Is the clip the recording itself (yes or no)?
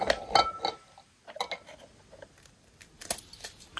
yes